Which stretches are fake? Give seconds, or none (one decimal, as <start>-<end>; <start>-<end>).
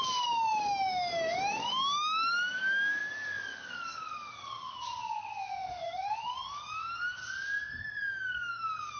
0.0-7.2; 7.8-9.0